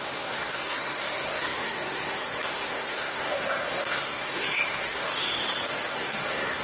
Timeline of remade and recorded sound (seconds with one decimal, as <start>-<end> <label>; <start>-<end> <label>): 0.0-5.1 remade; 5.1-5.9 recorded; 5.9-6.6 remade